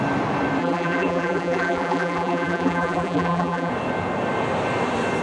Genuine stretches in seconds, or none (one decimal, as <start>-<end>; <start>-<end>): 0.0-0.6; 3.7-5.2